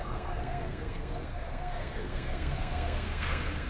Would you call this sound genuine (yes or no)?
no